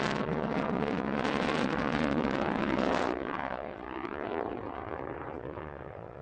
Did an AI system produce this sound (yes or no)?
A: yes